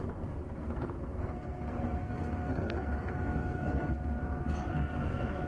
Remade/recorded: remade